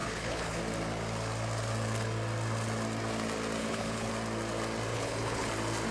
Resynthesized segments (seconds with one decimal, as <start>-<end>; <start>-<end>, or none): 0.0-0.6; 3.6-4.1; 4.9-5.5